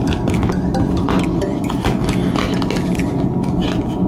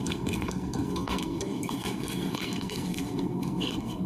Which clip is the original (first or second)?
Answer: first